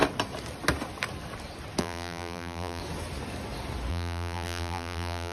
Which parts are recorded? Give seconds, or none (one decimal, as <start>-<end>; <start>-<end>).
0.0-1.8; 2.8-3.9